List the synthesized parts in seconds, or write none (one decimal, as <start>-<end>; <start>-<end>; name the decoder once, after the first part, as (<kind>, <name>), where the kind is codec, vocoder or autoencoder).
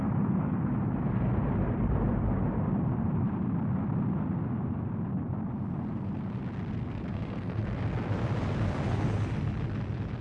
7.1-7.6 (codec, SNAC)